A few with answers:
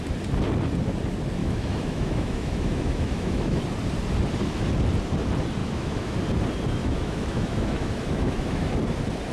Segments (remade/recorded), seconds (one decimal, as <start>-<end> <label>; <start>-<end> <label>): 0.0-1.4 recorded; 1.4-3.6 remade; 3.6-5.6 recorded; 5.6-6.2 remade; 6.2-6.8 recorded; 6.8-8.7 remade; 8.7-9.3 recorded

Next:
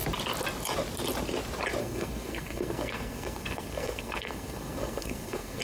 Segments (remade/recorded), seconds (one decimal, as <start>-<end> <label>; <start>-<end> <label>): 0.0-1.8 recorded; 1.8-5.6 remade

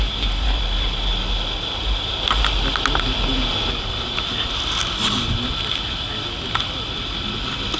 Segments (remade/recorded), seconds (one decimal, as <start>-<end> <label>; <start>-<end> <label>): 0.0-7.8 recorded